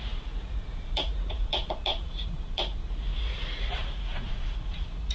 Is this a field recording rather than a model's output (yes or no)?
no